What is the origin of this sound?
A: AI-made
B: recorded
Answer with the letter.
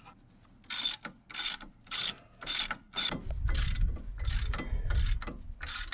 B